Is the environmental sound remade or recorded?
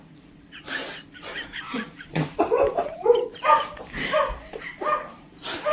remade